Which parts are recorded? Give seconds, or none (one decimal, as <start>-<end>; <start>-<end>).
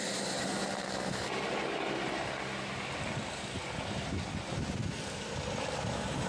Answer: 0.0-6.3